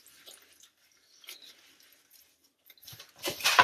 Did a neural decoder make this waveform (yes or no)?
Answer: no